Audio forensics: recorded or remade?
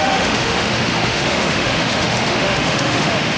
remade